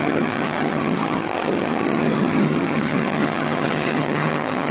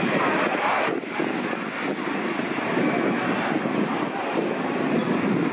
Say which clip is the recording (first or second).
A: second